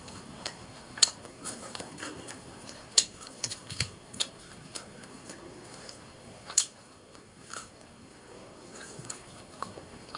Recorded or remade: remade